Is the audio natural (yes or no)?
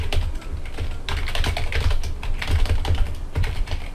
no